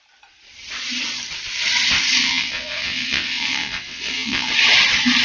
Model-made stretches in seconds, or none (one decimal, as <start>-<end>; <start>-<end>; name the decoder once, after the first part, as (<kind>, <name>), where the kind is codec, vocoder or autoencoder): 2.2-4.5 (vocoder, WaveNeXt)